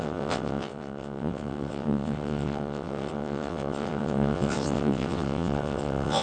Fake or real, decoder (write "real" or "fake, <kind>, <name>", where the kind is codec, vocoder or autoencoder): fake, vocoder, WaveNeXt